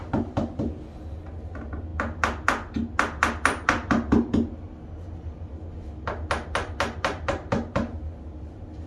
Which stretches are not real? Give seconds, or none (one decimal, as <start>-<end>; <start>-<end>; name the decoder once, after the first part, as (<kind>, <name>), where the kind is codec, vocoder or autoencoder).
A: none